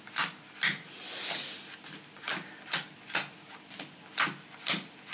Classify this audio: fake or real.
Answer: real